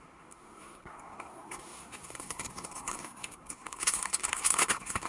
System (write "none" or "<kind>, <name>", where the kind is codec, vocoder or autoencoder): codec, SNAC